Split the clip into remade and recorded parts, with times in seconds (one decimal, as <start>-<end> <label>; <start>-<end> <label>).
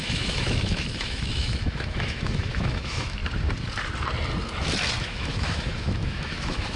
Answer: 0.0-3.2 remade; 3.2-5.0 recorded; 5.0-6.8 remade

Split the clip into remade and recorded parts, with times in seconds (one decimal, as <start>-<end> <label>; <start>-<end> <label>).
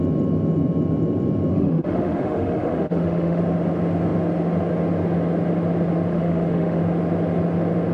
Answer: 0.0-1.5 recorded; 1.5-3.4 remade; 3.4-6.1 recorded; 6.1-6.8 remade; 6.8-7.9 recorded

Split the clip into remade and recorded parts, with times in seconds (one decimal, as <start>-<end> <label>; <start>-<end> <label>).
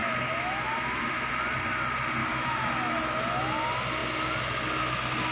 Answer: 0.0-1.3 remade; 1.3-2.2 recorded; 2.2-3.5 remade; 3.5-5.3 recorded